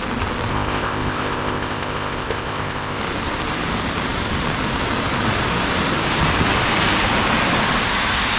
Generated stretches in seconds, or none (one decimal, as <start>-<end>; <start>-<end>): 0.5-3.0